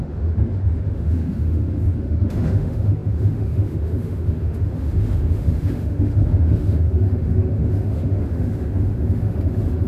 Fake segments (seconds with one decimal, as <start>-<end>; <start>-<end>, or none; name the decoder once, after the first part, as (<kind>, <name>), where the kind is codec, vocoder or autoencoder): 0.0-9.9 (autoencoder, DAC-VAE)